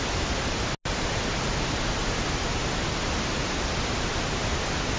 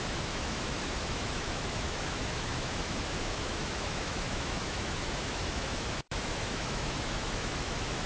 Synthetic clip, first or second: second